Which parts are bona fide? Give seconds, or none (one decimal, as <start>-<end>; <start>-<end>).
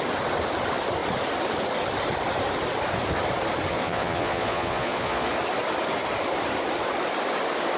0.0-3.7; 5.3-7.8